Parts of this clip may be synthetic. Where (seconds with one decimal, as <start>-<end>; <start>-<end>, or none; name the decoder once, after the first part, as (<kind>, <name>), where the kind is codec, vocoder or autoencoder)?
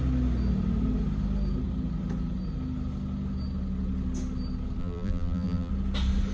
4.8-5.7 (vocoder, BigVGAN v2)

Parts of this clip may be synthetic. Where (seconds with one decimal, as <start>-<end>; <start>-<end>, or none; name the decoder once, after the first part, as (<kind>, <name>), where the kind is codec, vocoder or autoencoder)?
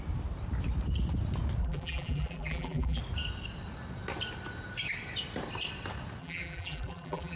1.6-3.0 (vocoder, BigVGAN v2); 6.2-7.4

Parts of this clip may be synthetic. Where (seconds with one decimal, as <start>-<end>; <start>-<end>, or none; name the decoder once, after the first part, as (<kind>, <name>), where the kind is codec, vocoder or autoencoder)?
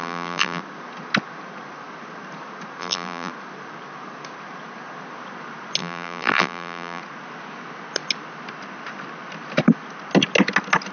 0.0-0.6 (vocoder, BigVGAN v2); 2.8-3.3; 5.8-7.0